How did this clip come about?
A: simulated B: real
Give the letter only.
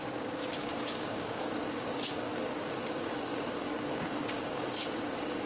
A